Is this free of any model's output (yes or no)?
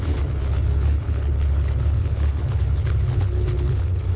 no